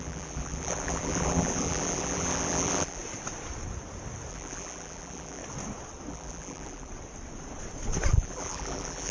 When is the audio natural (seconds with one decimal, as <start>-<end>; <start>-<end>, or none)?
3.0-4.3; 5.4-6.1; 6.9-8.1